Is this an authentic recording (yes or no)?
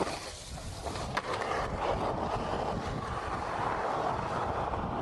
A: yes